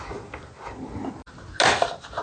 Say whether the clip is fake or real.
real